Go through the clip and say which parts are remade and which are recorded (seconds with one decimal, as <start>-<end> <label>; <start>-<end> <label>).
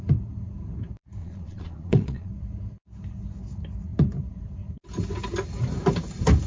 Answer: 0.0-1.2 recorded; 1.2-2.3 remade; 2.3-6.5 recorded